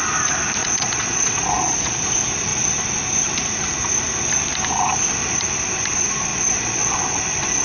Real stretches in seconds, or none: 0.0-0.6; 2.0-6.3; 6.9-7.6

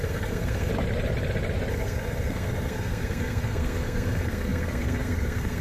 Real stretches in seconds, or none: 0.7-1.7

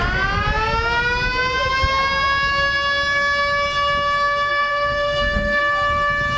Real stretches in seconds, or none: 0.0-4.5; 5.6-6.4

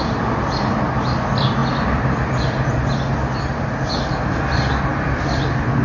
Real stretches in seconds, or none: 0.0-5.8

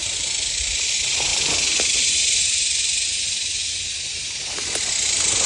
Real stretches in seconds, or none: 0.0-1.3; 2.8-5.5